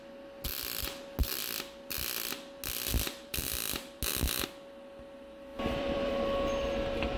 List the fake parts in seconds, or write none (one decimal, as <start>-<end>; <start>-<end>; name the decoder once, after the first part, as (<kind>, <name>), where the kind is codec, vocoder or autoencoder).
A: 2.9-4.0 (vocoder, BigVGAN v2); 5.5-6.1

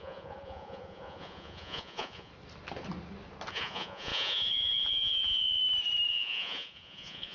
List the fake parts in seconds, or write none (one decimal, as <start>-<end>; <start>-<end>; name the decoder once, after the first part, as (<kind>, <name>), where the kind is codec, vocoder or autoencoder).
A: 0.0-2.3 (vocoder, Vocos); 3.5-5.6; 6.1-7.3

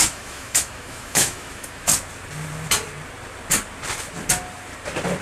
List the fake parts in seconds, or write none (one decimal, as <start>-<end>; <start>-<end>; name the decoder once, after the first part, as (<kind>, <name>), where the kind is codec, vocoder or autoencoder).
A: 0.0-1.9 (autoencoder, DAC-VAE)

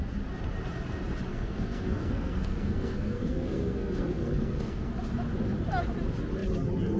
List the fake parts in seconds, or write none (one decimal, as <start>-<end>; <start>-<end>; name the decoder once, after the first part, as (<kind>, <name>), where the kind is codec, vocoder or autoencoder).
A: 1.3-4.9 (codec, SNAC)